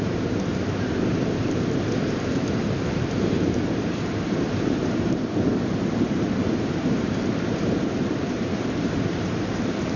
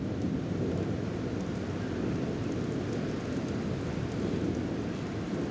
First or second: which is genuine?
second